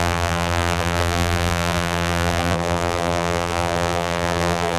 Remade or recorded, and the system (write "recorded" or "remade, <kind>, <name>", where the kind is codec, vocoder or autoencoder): remade, vocoder, BigVGAN v2